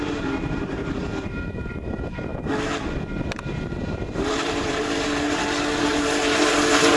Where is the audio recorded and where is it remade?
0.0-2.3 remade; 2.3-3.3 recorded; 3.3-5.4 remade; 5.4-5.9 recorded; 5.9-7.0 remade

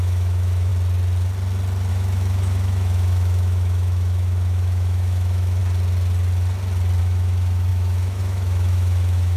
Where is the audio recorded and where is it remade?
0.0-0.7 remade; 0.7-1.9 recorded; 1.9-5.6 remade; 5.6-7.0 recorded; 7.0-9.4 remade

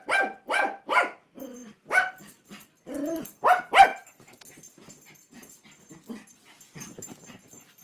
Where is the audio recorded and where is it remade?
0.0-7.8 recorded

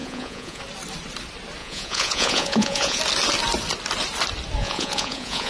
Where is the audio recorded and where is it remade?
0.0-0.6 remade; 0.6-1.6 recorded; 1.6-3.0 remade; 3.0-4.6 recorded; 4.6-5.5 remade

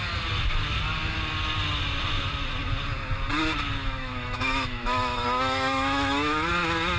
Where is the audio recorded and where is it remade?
0.0-3.8 recorded; 3.8-6.5 remade; 6.5-7.0 recorded